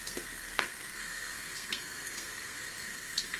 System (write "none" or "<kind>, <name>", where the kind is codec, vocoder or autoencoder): codec, SNAC